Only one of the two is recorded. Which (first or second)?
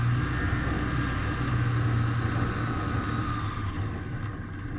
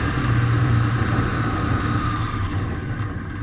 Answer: first